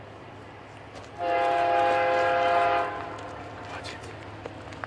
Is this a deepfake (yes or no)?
no